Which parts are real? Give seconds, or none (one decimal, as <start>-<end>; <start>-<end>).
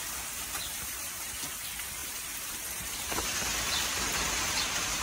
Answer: 0.0-0.7; 1.4-2.0